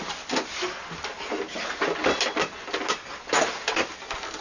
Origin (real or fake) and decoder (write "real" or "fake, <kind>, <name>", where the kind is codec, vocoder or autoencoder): real